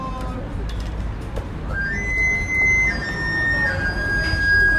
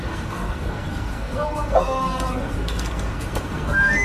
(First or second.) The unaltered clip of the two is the first